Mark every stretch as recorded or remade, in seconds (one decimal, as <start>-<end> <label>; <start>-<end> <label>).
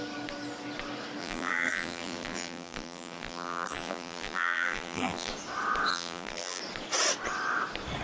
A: 0.0-1.2 recorded; 1.2-5.3 remade; 5.3-5.9 recorded; 5.9-6.6 remade; 6.6-8.0 recorded